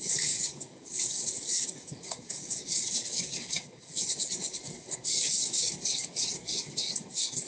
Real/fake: fake